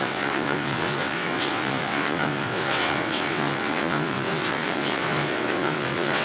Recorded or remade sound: remade